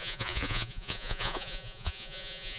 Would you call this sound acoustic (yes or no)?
no